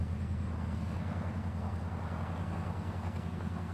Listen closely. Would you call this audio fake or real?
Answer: fake